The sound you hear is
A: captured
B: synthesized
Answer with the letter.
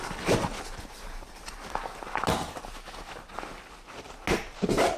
A